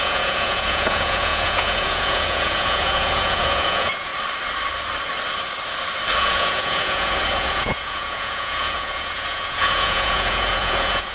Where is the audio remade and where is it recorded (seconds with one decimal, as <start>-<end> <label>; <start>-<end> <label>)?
0.0-4.1 remade; 4.1-6.2 recorded; 6.2-11.1 remade